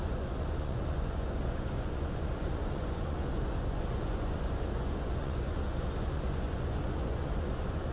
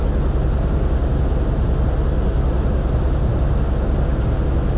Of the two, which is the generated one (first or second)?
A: first